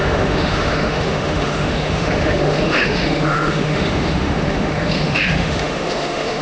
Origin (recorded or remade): remade